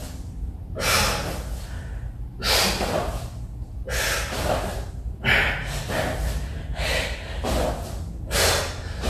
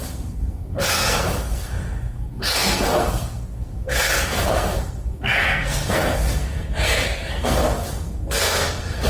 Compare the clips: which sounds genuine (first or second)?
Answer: first